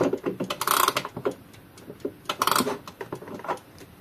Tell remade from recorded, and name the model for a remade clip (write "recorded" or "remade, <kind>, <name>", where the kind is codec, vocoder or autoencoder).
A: recorded